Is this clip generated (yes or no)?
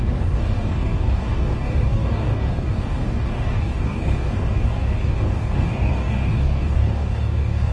yes